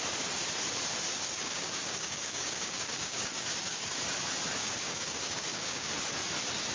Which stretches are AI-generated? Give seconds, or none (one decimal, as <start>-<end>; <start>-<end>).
1.1-4.0; 4.6-5.9